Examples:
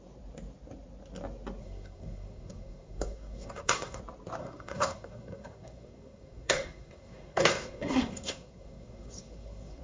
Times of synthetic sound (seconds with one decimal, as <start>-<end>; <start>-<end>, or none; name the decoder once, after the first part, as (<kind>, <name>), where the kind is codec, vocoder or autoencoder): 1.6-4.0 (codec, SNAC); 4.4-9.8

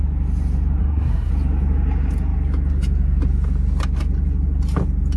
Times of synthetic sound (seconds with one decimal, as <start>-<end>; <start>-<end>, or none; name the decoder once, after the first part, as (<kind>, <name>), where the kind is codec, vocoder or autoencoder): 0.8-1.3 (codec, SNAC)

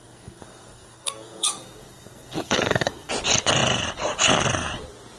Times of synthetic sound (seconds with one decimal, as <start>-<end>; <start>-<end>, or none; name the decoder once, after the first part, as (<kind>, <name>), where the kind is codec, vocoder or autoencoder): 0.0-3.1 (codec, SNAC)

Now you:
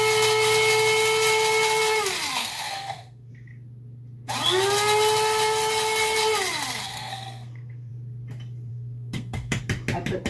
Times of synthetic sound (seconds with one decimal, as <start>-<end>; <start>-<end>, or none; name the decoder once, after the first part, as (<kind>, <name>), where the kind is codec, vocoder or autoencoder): 2.4-3.3 (codec, SNAC); 6.8-7.9; 8.7-9.6